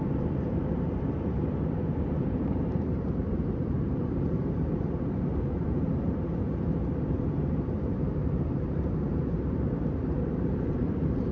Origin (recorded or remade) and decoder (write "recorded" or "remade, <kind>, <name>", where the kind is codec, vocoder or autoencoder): remade, vocoder, BigVGAN v2